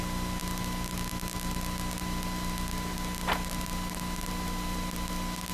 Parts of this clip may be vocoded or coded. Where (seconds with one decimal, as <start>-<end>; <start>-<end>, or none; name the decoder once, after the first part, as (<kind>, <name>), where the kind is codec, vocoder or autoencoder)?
none